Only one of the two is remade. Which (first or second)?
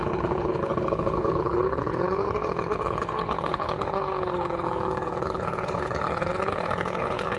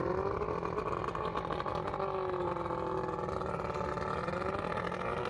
first